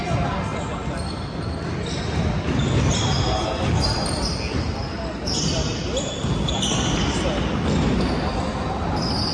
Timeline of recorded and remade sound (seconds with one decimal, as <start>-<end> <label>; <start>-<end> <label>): 0.0-9.3 recorded